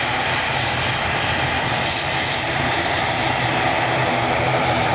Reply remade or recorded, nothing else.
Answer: remade